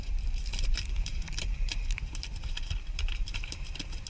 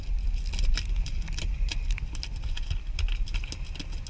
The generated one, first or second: first